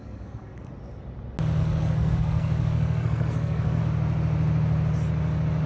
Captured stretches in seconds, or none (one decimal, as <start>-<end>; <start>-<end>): 0.7-1.6; 3.8-5.7